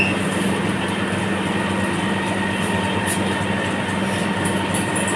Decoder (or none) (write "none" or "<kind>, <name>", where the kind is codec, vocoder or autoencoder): none